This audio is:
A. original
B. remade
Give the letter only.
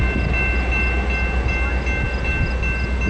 A